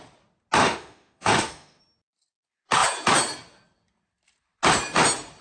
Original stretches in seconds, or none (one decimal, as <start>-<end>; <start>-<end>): 0.0-0.6; 1.8-5.4